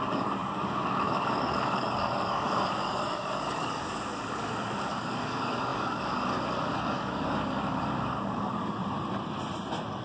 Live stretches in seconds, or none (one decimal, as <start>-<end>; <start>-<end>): 8.8-10.0